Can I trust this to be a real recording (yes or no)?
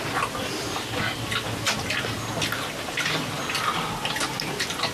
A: yes